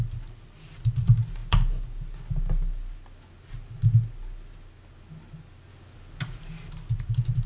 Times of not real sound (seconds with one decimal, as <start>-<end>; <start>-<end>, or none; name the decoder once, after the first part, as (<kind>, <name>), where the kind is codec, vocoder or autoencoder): none

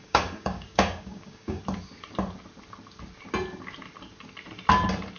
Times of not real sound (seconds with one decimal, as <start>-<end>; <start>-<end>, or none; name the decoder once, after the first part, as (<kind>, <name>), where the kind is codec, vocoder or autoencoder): 0.0-1.6 (codec, DAC)

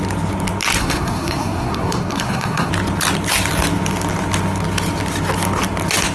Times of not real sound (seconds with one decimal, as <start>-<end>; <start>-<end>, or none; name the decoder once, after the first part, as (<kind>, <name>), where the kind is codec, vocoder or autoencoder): 0.8-2.7 (codec, SNAC)

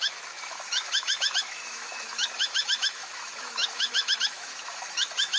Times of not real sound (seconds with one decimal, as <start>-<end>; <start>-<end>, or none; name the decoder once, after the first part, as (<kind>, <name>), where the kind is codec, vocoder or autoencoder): 0.0-5.4 (autoencoder, DAC-VAE)

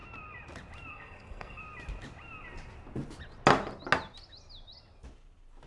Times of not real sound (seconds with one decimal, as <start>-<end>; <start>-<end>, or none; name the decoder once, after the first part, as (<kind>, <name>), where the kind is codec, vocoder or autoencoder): 0.9-1.6 (codec, SNAC)

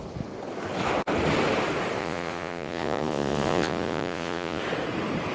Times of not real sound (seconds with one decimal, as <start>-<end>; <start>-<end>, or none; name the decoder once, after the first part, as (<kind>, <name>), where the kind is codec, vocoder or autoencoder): 2.0-4.6 (vocoder, Vocos)